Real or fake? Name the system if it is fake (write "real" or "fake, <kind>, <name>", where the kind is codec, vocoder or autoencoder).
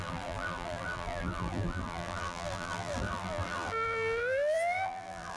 fake, vocoder, BigVGAN v2